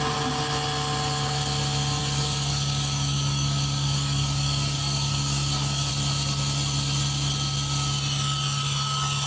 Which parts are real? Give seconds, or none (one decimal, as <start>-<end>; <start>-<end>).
0.0-2.0; 5.9-9.3